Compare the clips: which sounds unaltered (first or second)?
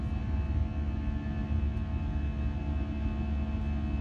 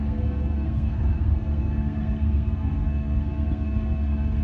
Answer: first